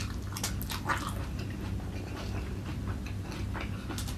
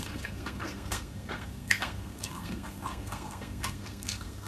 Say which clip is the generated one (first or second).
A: second